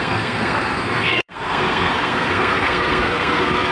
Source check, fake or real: fake